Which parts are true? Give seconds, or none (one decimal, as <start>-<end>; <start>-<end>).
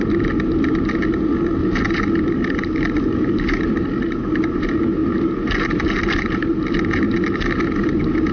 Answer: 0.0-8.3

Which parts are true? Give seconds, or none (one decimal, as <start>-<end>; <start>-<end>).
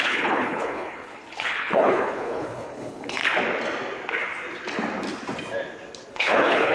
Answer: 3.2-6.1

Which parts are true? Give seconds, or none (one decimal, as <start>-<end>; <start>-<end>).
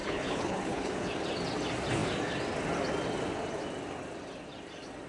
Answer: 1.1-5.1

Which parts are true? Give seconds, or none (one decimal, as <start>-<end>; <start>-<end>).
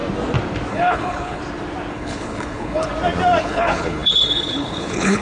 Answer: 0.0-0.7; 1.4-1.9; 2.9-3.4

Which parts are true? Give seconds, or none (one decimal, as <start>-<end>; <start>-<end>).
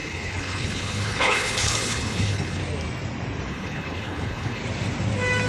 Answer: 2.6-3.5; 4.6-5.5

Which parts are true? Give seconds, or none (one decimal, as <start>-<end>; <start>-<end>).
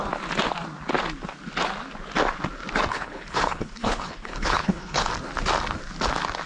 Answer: 0.0-2.9; 5.1-6.5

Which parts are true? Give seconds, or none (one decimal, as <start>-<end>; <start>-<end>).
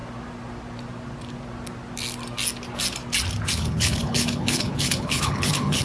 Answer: 0.0-3.5